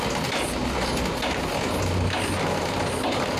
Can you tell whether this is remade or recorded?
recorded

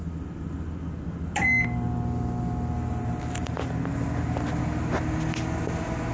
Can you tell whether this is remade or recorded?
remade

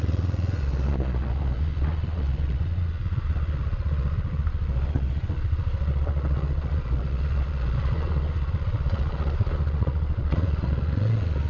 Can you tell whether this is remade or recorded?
remade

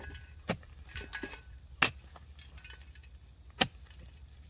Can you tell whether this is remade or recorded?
recorded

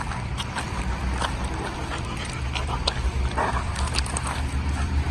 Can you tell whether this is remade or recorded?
remade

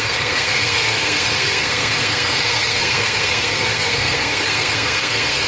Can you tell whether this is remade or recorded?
remade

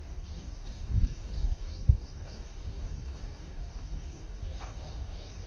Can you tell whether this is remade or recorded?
remade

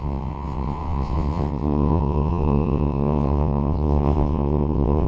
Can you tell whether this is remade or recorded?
remade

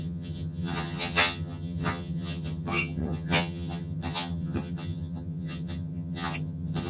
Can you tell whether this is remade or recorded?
remade